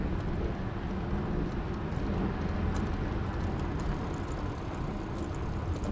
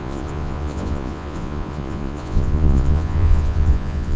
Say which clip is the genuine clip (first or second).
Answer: first